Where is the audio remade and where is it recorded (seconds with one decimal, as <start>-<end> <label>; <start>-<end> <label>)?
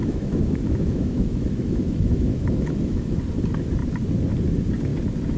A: 0.0-3.2 remade; 3.2-5.4 recorded